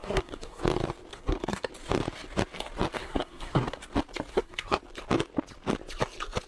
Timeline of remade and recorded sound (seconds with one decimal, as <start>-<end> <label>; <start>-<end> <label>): 0.0-0.6 remade; 0.6-1.1 recorded; 1.1-1.7 remade; 1.7-3.0 recorded; 3.0-3.8 remade; 3.8-4.3 recorded; 4.3-4.8 remade; 4.8-6.5 recorded